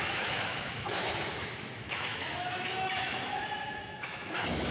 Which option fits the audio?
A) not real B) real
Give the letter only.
A